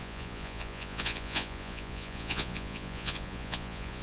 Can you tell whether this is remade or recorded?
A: remade